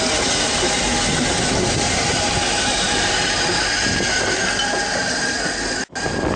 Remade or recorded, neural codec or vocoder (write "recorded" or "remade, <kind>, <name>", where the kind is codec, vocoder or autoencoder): recorded